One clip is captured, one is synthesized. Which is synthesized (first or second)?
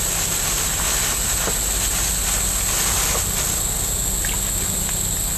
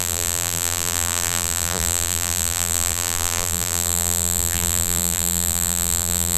second